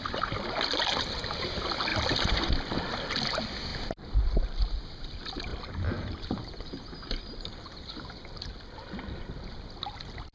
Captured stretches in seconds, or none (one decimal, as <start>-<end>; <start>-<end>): 0.0-10.3